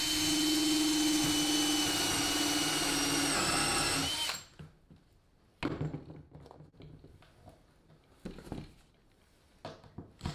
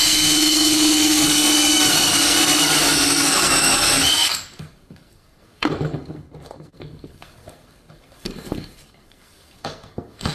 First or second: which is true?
first